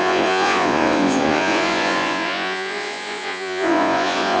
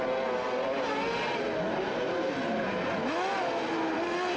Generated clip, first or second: first